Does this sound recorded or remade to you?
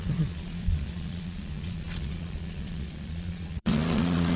remade